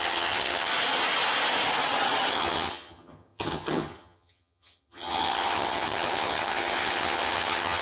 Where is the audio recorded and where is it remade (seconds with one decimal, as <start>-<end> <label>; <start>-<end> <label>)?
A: 0.0-0.7 remade; 0.7-2.3 recorded; 2.3-7.8 remade